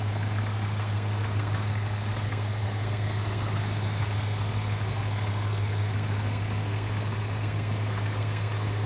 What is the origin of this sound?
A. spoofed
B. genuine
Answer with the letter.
A